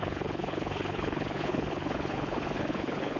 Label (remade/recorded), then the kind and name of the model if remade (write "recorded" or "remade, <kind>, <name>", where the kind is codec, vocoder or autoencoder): remade, codec, HILCodec